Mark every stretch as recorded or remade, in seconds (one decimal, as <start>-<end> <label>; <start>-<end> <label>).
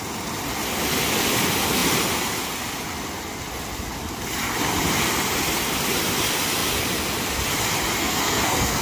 0.0-8.0 recorded; 8.0-8.8 remade